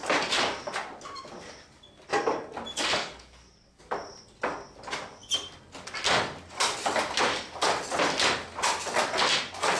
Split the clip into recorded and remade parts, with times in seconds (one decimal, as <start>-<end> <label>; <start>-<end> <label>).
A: 0.0-3.0 recorded; 3.0-3.8 remade; 3.8-9.8 recorded